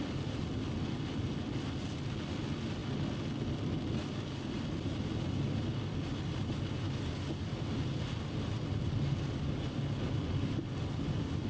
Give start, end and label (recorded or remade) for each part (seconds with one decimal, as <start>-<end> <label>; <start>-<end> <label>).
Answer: 0.0-11.5 recorded